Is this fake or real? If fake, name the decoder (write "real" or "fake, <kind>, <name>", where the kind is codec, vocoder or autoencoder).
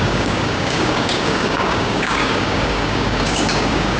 fake, codec, DAC